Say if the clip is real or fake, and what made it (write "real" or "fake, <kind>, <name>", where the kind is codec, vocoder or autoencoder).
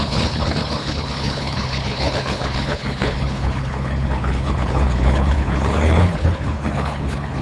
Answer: fake, codec, HILCodec